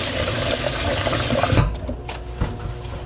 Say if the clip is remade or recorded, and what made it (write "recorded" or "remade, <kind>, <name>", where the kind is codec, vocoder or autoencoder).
recorded